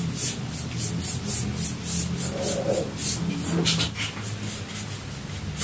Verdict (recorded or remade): recorded